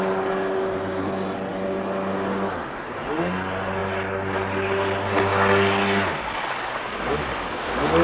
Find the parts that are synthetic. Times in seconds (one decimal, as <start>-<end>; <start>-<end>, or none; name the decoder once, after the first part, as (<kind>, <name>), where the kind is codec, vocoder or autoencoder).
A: none